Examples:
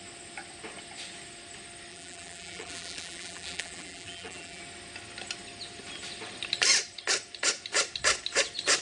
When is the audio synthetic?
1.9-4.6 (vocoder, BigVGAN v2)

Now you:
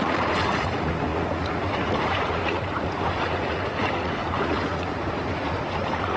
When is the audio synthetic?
0.0-6.2 (vocoder, Vocos)

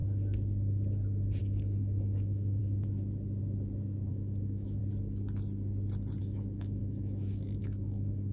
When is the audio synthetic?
1.4-2.6 (autoencoder, DAC-VAE); 4.1-4.8; 6.2-8.3

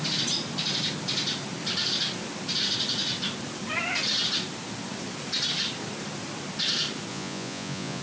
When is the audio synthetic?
7.1-8.0 (vocoder, Vocos)

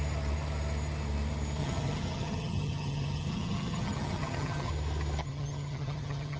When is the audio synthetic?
1.6-4.7 (vocoder, HiFi-GAN); 5.2-6.4

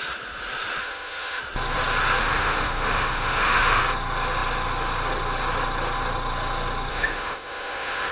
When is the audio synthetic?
0.8-1.4 (autoencoder, DAC-VAE); 2.2-3.8; 6.9-8.1